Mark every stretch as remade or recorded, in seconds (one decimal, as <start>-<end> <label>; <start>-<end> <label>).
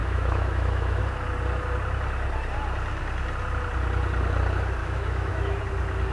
0.0-1.0 remade; 1.0-4.8 recorded; 4.8-5.6 remade; 5.6-6.1 recorded